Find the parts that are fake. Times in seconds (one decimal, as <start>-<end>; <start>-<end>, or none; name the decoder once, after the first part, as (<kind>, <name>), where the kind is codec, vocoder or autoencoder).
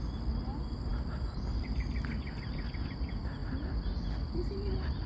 none